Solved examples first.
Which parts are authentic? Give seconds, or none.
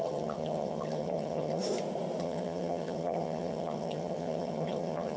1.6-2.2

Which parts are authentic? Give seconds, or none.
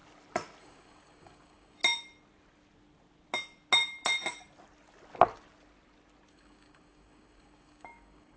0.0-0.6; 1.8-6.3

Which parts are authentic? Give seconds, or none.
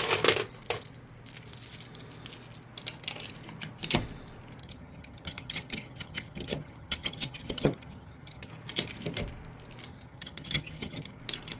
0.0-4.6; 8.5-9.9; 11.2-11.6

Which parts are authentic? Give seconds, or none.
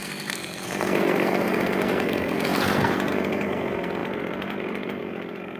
none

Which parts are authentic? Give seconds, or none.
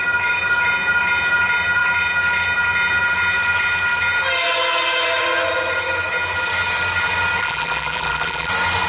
0.0-7.4; 8.5-8.9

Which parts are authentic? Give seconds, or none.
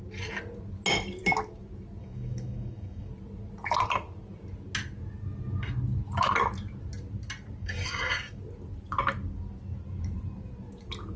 0.0-2.0; 3.1-7.6; 8.4-11.2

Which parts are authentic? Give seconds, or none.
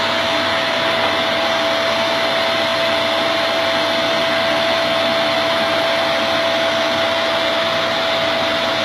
0.0-8.8